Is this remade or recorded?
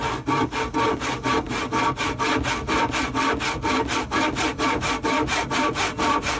recorded